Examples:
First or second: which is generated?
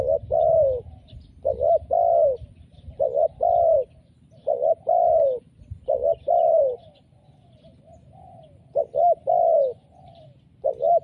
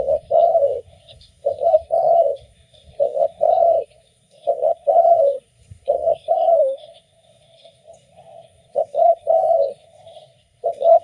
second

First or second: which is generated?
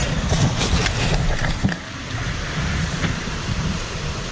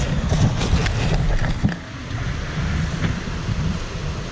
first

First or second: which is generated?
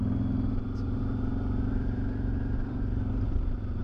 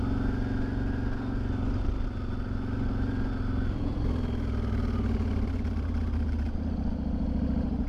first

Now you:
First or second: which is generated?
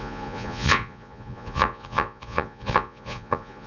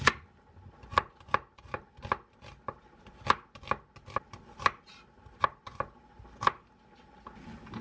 first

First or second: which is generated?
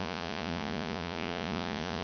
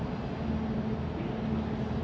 first